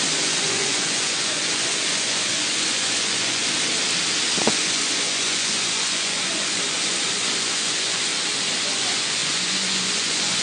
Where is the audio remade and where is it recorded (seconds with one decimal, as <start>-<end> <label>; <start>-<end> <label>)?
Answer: 0.0-3.4 remade; 3.4-4.4 recorded; 4.4-8.1 remade; 8.1-8.6 recorded; 8.6-10.4 remade